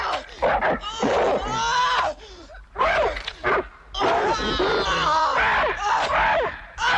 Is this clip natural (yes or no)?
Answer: no